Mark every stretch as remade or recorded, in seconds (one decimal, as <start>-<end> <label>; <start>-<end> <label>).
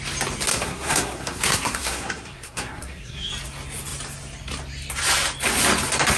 0.0-0.5 recorded; 0.5-3.3 remade; 3.3-6.2 recorded